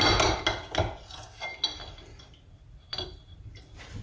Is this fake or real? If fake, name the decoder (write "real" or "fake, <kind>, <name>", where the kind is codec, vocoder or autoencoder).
real